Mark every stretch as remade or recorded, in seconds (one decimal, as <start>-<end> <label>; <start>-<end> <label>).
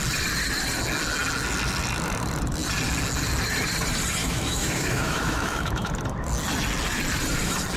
0.0-4.2 recorded; 4.2-5.9 remade; 5.9-7.8 recorded